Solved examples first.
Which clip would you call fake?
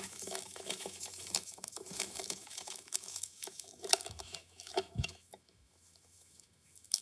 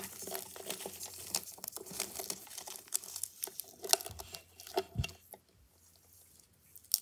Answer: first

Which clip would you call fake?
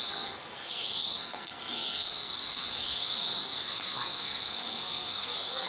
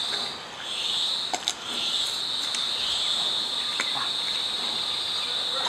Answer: first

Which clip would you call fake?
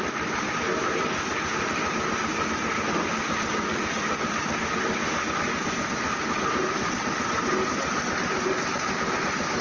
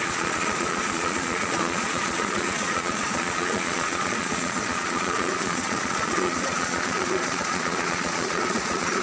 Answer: second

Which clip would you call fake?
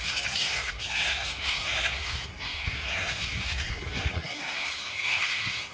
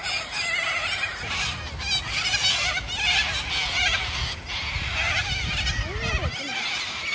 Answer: first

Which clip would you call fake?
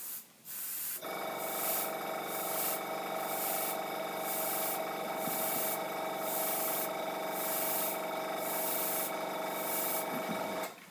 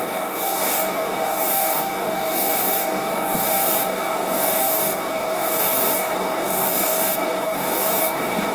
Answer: second